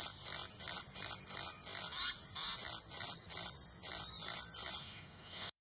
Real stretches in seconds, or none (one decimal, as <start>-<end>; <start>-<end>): 0.0-4.8